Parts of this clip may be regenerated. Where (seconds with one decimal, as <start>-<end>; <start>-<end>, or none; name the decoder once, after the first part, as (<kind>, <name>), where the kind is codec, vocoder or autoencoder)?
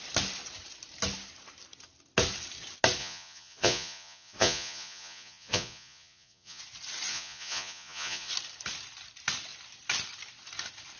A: 3.0-6.6 (vocoder, Vocos); 7.1-8.3